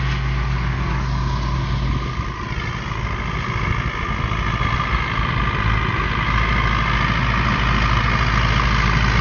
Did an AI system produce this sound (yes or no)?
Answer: no